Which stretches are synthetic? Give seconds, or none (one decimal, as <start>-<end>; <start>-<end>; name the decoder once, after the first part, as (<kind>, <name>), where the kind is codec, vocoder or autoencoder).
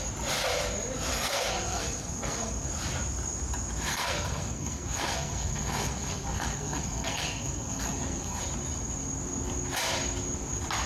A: 1.1-2.7 (codec, SNAC); 3.9-8.4